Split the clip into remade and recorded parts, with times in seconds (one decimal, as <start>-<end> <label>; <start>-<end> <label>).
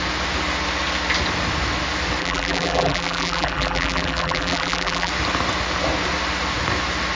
0.0-2.2 recorded; 2.2-5.1 remade; 5.1-7.1 recorded